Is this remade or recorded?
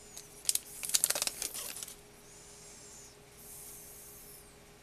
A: recorded